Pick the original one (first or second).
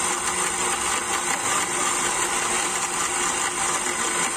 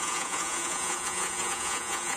first